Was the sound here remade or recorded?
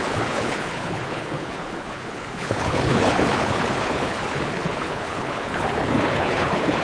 remade